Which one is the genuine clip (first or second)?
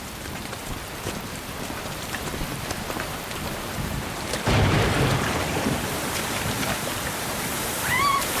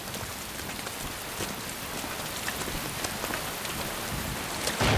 second